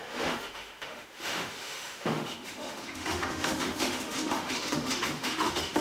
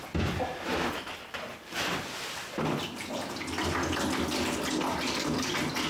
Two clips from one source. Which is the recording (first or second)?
second